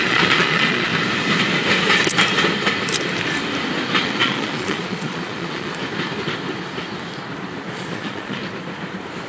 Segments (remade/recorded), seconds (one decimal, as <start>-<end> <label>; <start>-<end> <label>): 0.0-0.9 remade; 0.9-4.0 recorded; 4.0-5.8 remade; 5.8-7.7 recorded; 7.7-8.4 remade; 8.4-9.3 recorded